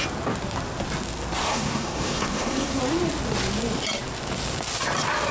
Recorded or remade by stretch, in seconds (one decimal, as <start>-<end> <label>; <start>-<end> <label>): 0.0-1.4 recorded; 1.4-2.8 remade; 2.8-5.3 recorded